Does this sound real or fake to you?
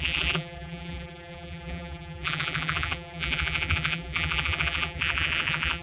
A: fake